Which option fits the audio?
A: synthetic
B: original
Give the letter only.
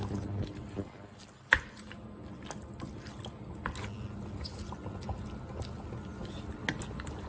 B